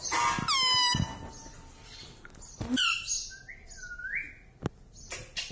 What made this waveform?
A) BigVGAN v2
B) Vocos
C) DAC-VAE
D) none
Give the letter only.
D